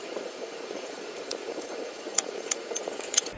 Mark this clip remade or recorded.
remade